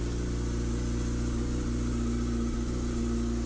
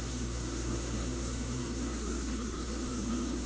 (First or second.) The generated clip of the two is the second